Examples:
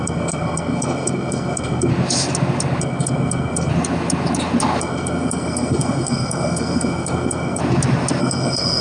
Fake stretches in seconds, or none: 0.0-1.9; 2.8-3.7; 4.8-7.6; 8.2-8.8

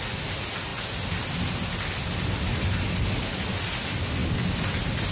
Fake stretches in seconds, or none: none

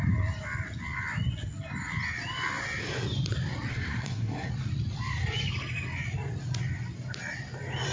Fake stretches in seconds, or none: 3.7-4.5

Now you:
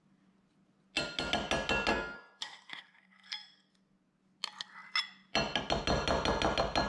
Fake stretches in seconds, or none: 1.9-3.7

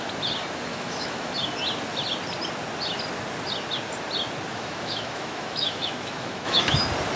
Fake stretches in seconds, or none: 0.7-1.3; 4.5-6.8

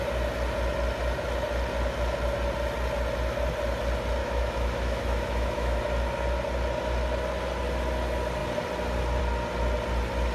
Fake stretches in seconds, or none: 4.2-5.8

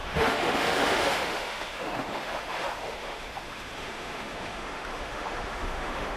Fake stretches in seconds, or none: 0.0-6.2